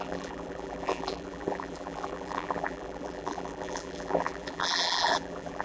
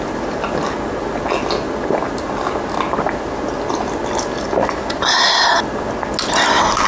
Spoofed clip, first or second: first